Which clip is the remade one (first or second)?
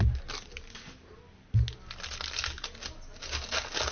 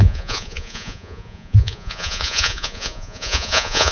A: second